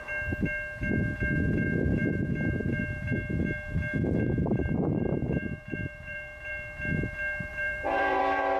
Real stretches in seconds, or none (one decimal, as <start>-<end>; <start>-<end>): 0.0-1.9; 2.8-4.6; 6.5-7.5; 8.2-8.6